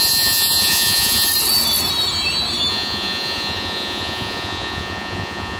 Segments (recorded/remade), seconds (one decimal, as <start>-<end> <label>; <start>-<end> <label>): 0.0-1.3 remade; 1.3-2.7 recorded; 2.7-5.6 remade